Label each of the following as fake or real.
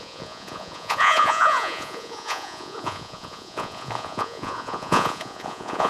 fake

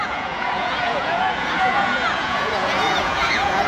fake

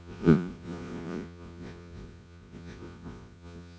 fake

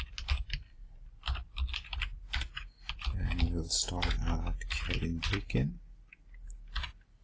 real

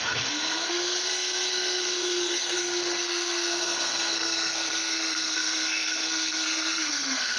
fake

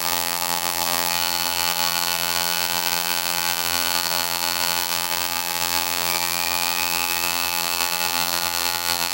fake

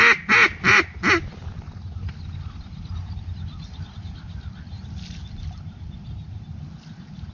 real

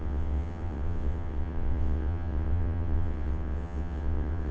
fake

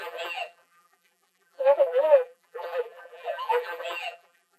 fake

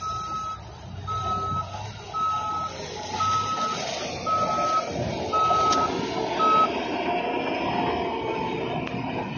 real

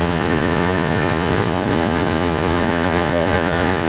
fake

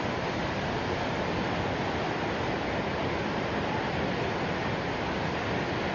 real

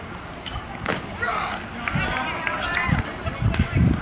real